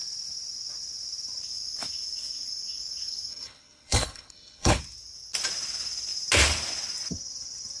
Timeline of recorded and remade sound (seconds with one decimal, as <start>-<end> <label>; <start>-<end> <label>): 0.0-3.3 recorded; 3.3-4.8 remade; 4.8-7.8 recorded